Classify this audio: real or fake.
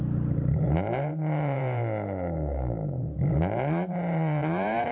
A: fake